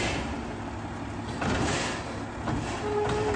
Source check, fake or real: real